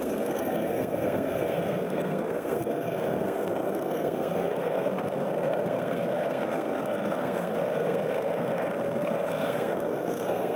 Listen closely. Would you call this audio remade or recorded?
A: remade